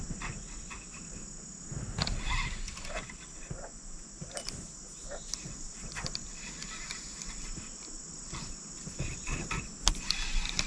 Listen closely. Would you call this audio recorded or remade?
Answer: recorded